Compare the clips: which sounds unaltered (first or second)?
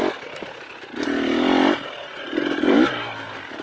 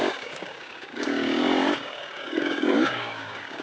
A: first